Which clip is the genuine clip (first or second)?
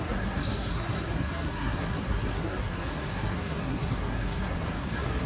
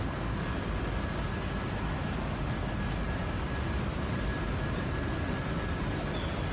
second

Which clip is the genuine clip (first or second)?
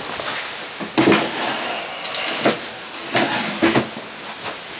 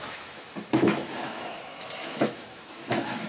first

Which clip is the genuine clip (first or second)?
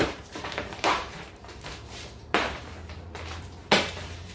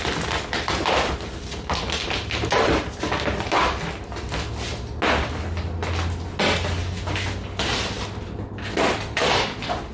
second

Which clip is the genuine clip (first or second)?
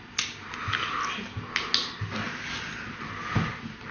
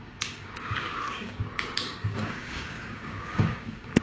first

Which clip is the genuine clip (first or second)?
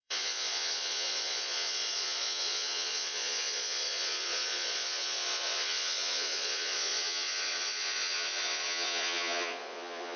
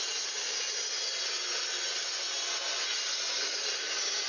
second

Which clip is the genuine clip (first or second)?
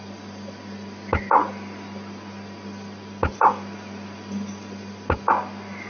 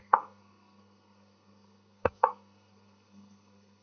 first